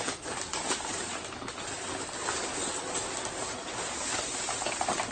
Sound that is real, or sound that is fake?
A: real